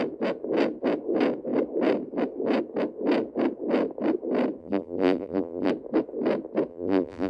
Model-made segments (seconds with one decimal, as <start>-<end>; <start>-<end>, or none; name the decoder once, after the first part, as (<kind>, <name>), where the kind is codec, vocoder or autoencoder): 4.6-5.7 (vocoder, BigVGAN v2); 6.7-7.3